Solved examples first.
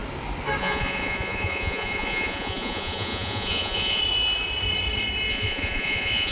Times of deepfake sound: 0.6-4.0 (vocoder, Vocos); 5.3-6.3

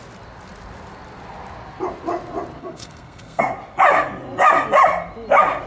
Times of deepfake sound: 2.6-3.4 (codec, SNAC)

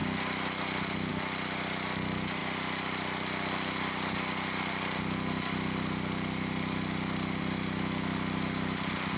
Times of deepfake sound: none

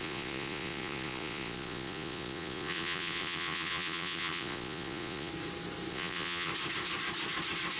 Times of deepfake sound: 0.0-5.3 (vocoder, Vocos); 5.9-6.5

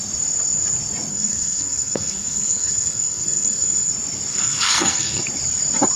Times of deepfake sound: 1.1-3.9 (codec, SNAC); 4.3-5.2

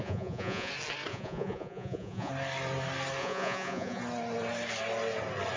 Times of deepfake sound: 0.0-0.7 (vocoder, Vocos); 1.1-2.3; 3.2-4.0

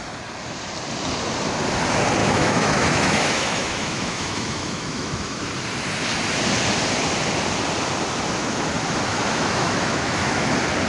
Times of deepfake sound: 2.2-5.4 (autoencoder, DAC-VAE); 9.1-10.5